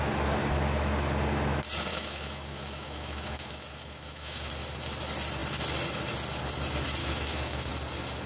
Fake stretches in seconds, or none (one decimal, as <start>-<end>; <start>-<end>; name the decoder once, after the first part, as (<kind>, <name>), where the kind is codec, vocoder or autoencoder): 1.9-4.5 (autoencoder, DAC-VAE); 7.0-7.7